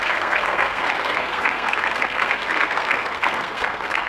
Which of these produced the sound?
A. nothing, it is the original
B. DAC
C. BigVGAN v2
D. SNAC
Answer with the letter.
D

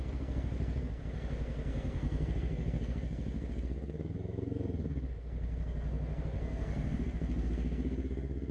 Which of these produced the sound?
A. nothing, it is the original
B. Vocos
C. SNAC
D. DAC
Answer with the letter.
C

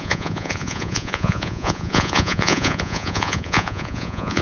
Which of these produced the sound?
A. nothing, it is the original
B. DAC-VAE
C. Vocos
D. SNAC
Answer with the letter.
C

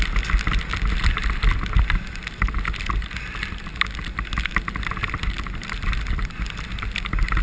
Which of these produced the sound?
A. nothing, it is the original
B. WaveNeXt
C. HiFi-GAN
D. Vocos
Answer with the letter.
A